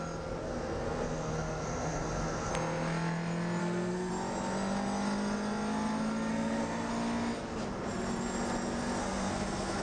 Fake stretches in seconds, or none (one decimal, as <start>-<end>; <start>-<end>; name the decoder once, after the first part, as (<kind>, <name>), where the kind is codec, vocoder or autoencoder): 0.4-2.5 (codec, SNAC); 3.6-4.1; 6.3-6.9; 9.0-9.8